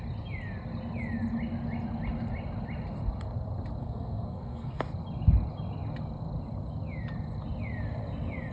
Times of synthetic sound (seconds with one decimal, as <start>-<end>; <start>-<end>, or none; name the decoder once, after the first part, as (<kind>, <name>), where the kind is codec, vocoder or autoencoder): 3.8-4.8 (codec, SNAC)